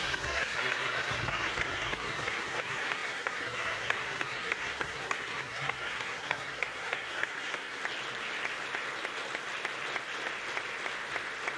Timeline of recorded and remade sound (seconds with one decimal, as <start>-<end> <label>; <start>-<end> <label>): 0.0-7.8 remade; 7.8-11.6 recorded